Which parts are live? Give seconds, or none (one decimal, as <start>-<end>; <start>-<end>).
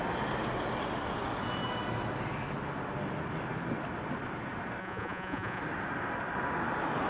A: 0.0-4.8; 5.6-7.1